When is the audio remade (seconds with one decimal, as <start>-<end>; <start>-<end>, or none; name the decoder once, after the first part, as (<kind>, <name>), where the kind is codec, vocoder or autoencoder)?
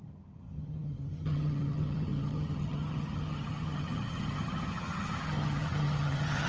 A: 0.0-6.5 (vocoder, HiFi-GAN)